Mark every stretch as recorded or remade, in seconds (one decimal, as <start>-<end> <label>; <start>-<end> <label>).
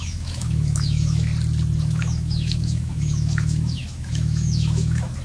0.0-1.3 remade; 1.3-1.8 recorded; 1.8-5.2 remade